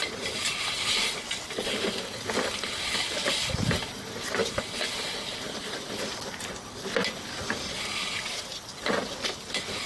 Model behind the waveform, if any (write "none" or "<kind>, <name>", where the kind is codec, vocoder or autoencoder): none